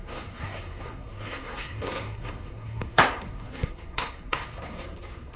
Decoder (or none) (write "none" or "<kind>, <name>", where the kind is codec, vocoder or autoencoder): codec, SNAC